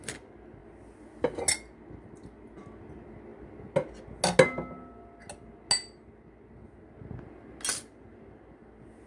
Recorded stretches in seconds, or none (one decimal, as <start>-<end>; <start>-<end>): 0.0-9.1